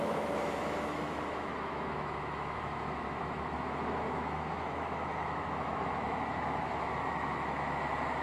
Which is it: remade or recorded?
remade